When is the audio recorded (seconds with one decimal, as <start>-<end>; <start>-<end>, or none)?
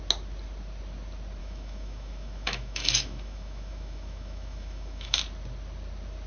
0.0-1.4; 5.2-6.3